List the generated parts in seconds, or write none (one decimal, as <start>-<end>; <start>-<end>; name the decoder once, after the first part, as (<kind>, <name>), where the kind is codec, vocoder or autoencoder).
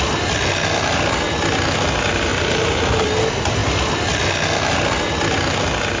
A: none